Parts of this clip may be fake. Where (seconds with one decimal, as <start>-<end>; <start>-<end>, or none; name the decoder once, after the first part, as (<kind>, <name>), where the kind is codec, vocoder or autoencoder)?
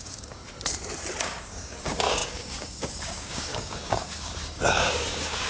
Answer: 0.0-0.4 (codec, DAC); 1.2-5.5